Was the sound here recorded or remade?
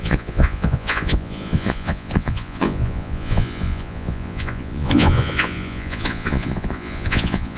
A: remade